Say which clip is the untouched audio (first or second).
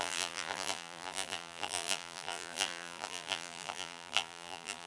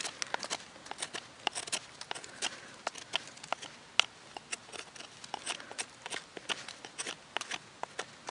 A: second